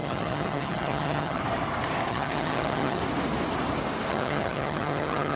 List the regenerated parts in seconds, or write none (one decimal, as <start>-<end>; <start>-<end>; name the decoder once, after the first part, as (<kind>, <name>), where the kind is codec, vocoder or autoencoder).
0.0-1.4 (vocoder, HiFi-GAN); 2.1-3.0; 4.1-5.4